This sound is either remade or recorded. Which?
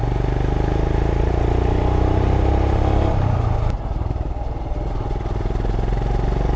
recorded